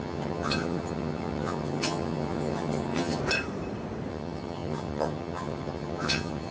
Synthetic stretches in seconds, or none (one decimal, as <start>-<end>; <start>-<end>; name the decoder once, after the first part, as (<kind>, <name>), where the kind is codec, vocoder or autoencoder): 0.0-3.2 (vocoder, HiFi-GAN); 4.1-6.5